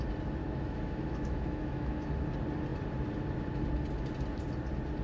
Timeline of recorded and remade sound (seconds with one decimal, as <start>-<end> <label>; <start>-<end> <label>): 0.0-0.4 recorded; 0.4-2.1 remade; 2.1-5.0 recorded